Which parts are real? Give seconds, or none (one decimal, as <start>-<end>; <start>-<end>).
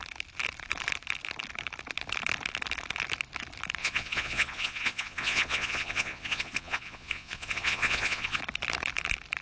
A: 0.0-3.8; 8.4-9.4